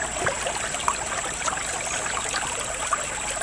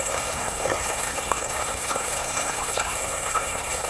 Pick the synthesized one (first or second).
second